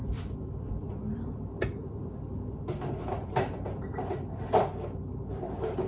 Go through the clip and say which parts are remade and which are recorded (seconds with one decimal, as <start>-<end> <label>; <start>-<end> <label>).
0.0-5.9 remade